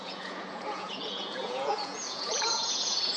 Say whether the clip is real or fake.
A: fake